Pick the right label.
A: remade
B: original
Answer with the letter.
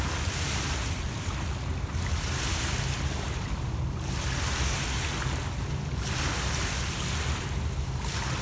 B